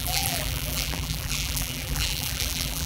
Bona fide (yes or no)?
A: no